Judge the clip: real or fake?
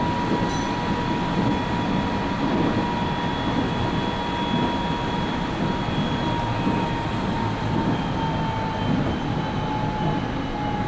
real